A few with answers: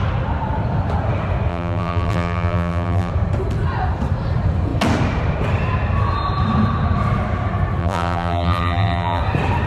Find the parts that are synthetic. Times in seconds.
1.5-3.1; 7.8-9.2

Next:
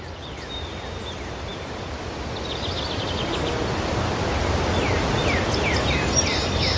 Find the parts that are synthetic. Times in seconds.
none

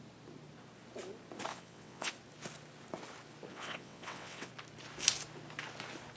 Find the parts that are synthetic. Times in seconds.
1.5-2.1; 3.5-4.5

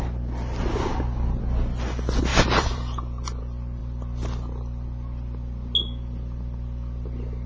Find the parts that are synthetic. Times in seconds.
2.3-3.4

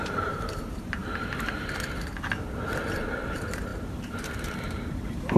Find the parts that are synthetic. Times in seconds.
0.0-1.0; 3.1-5.4

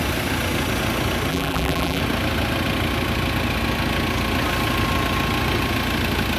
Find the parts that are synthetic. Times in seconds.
1.3-2.0